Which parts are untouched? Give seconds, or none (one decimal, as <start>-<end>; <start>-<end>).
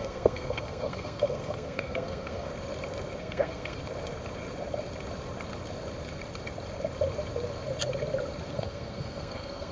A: 2.5-3.2; 3.8-8.5